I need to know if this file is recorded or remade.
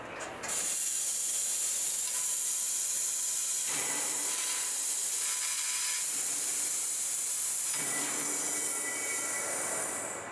recorded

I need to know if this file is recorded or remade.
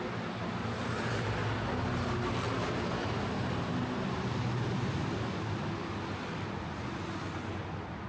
recorded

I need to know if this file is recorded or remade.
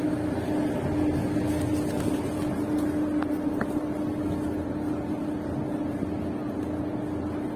recorded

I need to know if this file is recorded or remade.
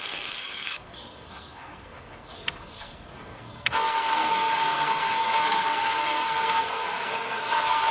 remade